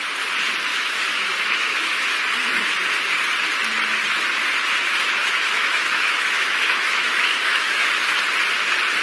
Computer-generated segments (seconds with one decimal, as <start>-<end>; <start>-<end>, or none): 0.7-2.2; 5.2-7.9

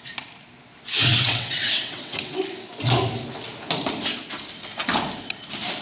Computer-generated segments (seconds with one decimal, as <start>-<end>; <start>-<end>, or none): 1.1-2.4

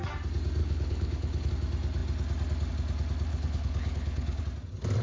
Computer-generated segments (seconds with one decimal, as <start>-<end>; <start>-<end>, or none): 0.6-1.5; 3.3-4.4

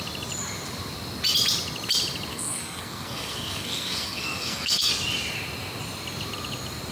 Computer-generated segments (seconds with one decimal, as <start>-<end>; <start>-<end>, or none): 2.3-4.9

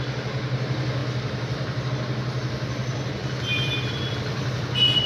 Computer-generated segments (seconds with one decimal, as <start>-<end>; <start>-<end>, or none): 1.0-1.9; 3.2-4.6

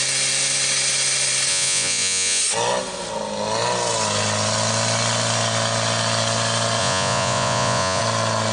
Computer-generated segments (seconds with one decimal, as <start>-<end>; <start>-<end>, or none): 1.5-2.4; 6.8-8.0